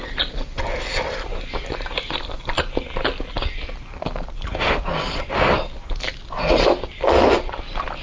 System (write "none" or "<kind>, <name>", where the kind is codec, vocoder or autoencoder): none